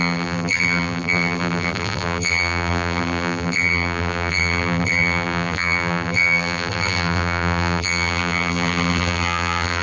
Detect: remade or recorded remade